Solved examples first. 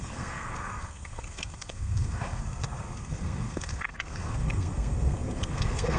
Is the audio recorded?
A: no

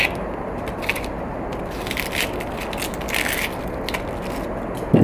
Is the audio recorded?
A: yes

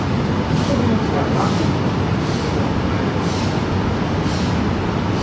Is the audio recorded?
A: yes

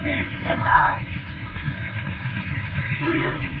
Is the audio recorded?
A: no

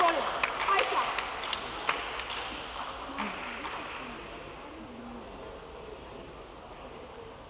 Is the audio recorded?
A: yes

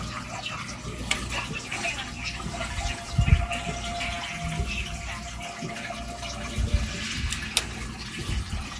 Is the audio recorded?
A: yes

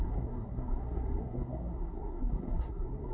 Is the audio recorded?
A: no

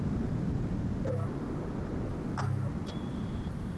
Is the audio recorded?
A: yes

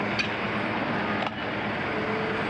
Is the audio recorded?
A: yes